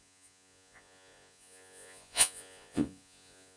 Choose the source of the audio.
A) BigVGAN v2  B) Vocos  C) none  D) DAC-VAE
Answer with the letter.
B